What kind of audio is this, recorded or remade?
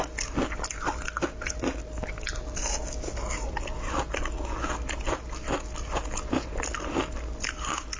recorded